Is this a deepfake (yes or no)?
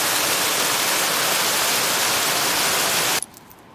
no